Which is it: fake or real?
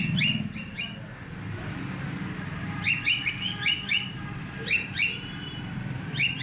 fake